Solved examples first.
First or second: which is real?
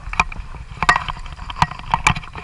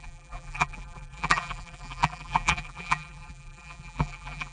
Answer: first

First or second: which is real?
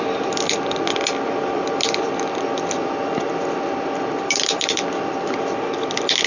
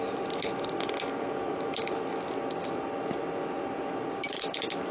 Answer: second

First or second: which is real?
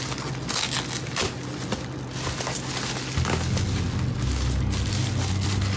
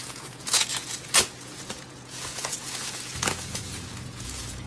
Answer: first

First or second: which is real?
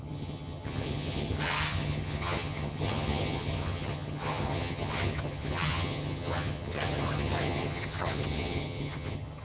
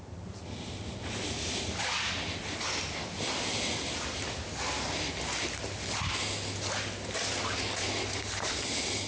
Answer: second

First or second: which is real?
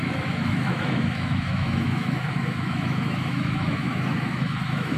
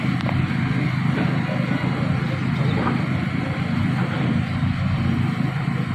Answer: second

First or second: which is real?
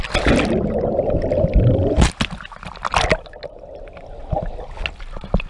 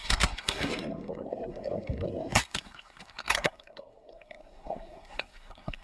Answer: first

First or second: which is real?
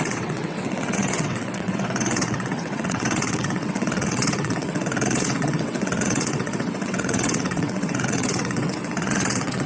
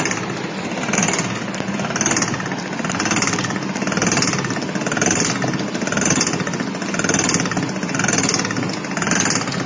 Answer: second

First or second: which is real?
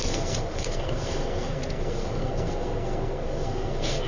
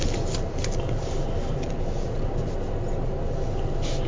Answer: second